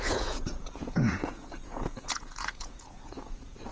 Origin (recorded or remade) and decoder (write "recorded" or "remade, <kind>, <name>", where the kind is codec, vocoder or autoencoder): remade, vocoder, Vocos